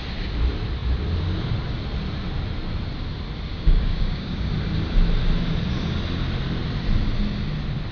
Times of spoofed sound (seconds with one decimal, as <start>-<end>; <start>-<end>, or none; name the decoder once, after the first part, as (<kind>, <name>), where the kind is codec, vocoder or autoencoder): 3.5-4.5 (codec, DAC)